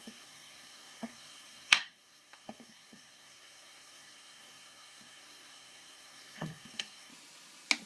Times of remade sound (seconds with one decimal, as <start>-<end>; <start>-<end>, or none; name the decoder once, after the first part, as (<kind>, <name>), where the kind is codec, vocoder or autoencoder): 0.0-7.1 (codec, SNAC)